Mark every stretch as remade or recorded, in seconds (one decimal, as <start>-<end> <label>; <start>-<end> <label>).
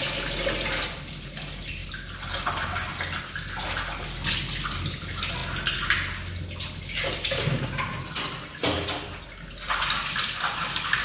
0.0-11.0 recorded